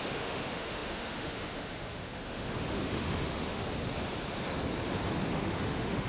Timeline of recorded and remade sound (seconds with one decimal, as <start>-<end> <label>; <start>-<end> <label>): 0.0-3.6 remade; 3.6-5.3 recorded; 5.3-6.1 remade